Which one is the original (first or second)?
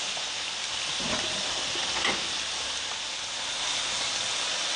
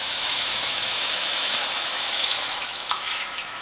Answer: first